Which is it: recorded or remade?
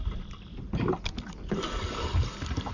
recorded